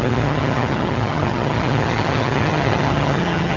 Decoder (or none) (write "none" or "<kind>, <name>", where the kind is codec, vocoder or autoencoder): vocoder, HiFi-GAN